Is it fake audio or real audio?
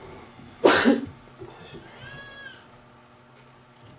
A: real